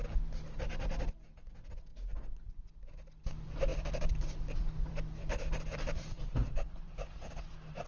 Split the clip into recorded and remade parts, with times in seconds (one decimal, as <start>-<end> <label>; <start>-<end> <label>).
0.0-1.9 recorded; 1.9-2.9 remade; 2.9-3.7 recorded; 3.7-7.5 remade; 7.5-7.9 recorded